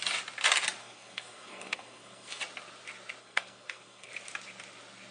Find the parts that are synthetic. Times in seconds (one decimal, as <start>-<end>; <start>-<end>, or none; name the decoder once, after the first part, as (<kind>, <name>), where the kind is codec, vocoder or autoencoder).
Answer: 0.8-2.4 (codec, SNAC); 3.2-4.1